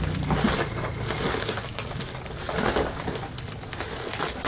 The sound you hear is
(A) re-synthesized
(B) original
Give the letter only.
B